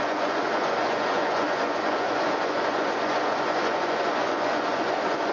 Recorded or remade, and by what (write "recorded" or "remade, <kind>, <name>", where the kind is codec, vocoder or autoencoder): remade, vocoder, Vocos